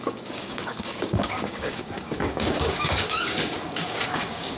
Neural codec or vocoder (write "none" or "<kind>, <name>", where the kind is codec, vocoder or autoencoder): codec, DAC